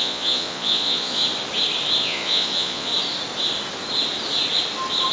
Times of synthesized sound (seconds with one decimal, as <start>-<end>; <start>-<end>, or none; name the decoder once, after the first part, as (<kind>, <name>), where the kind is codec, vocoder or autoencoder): 0.0-1.2 (vocoder, Vocos); 2.0-2.9